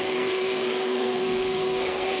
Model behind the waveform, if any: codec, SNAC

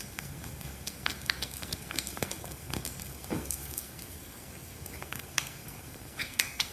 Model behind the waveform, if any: codec, SNAC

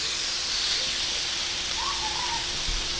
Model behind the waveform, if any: none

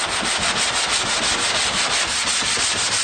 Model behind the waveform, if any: none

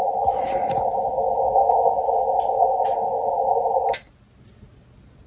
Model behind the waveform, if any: none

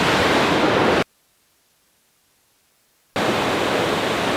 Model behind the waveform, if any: none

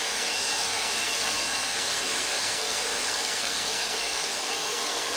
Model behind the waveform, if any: codec, SNAC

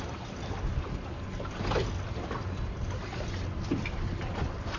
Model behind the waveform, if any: none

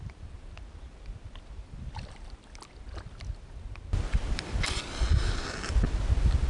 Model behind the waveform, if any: none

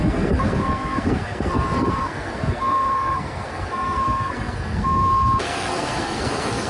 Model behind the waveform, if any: codec, SNAC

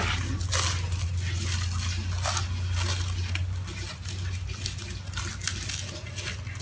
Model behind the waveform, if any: none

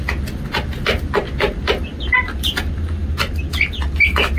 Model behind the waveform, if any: none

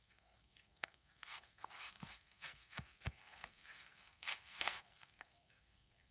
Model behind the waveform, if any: codec, SNAC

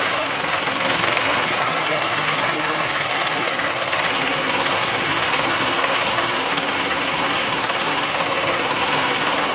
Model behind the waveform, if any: codec, SNAC